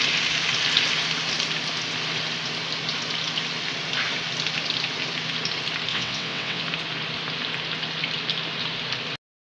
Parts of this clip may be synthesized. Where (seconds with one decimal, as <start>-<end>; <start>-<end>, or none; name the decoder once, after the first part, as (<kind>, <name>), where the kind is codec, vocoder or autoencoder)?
5.9-6.6 (vocoder, WaveNeXt)